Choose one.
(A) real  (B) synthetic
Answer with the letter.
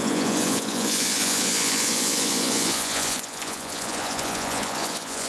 B